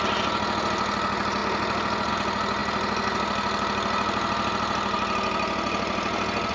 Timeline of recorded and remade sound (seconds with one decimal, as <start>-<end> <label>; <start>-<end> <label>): 0.0-6.5 recorded